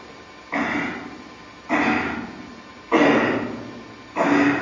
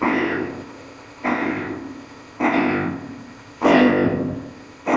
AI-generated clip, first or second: second